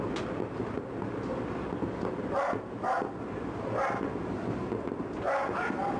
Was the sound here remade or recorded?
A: recorded